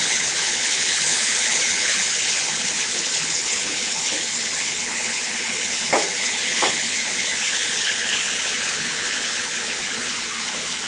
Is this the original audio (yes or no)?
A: no